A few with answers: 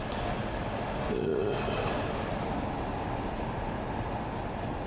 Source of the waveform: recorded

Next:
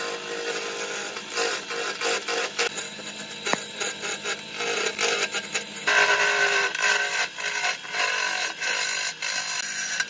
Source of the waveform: recorded